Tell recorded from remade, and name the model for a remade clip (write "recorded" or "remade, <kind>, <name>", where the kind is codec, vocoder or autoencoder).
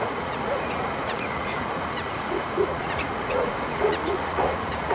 remade, vocoder, Vocos